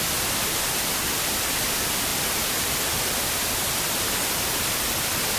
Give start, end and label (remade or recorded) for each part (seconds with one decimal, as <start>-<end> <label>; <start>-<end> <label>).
0.0-5.4 recorded